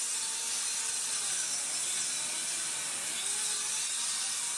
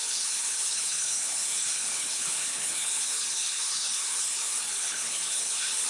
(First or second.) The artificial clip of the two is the second